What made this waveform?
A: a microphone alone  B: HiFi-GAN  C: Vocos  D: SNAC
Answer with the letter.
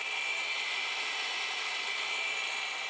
A